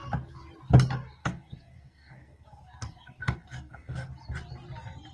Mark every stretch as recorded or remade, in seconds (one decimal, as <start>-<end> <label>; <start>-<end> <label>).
0.0-1.2 recorded; 1.2-4.1 remade; 4.1-5.1 recorded